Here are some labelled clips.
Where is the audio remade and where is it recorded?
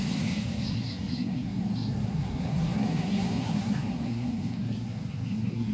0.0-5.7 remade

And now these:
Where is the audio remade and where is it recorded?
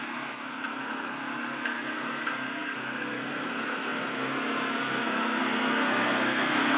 0.0-6.8 remade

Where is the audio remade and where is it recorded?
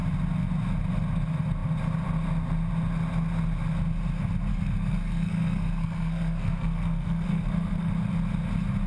0.0-4.5 recorded; 4.5-7.9 remade; 7.9-8.9 recorded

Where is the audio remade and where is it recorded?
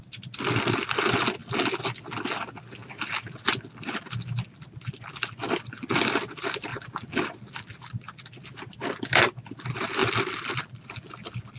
0.0-11.6 recorded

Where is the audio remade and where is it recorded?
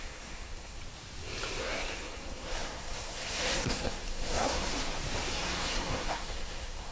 0.0-0.8 remade; 0.8-1.6 recorded; 1.6-4.7 remade; 4.7-5.3 recorded; 5.3-6.9 remade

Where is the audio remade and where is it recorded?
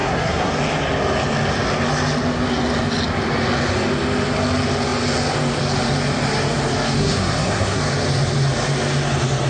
0.0-0.5 remade; 0.5-7.0 recorded; 7.0-7.8 remade; 7.8-9.5 recorded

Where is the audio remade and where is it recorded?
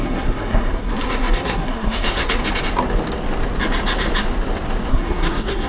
0.0-2.4 remade; 2.4-4.9 recorded; 4.9-5.7 remade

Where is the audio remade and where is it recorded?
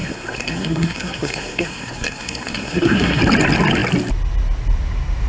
0.0-3.2 remade; 3.2-5.3 recorded